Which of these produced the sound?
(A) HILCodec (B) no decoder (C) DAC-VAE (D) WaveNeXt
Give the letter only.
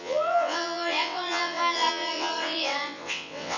D